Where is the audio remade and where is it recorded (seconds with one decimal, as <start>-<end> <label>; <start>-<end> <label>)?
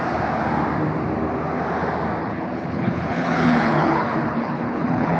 0.0-2.2 recorded; 2.2-5.2 remade